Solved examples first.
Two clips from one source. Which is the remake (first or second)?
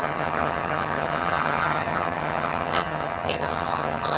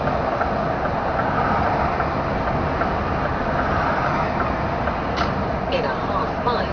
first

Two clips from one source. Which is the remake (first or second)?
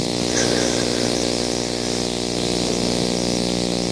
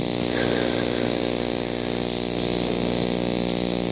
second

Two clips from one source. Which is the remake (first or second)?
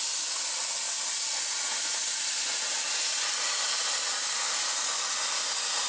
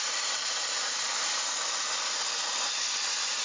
second